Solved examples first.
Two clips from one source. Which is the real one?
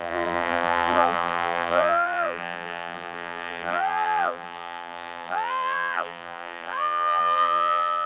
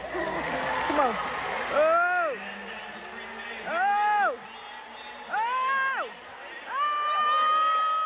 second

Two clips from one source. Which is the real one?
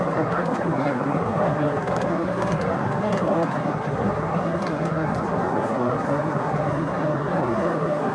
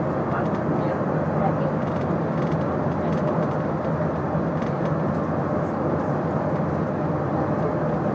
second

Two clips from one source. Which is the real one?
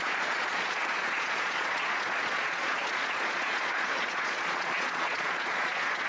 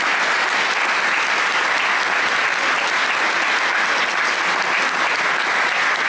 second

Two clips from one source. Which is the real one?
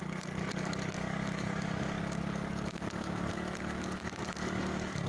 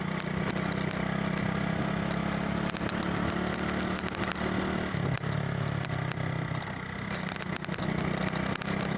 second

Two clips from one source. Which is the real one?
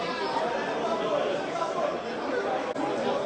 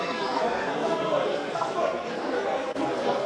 first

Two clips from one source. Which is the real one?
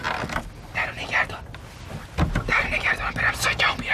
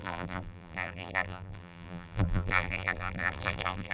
first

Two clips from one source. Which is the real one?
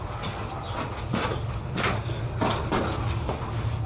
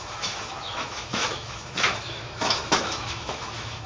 first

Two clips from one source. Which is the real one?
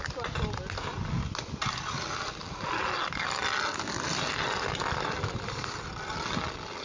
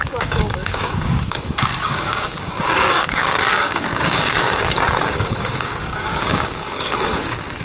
first